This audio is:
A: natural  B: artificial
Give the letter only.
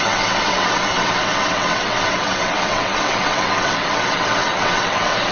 B